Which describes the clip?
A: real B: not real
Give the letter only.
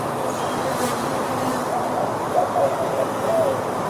A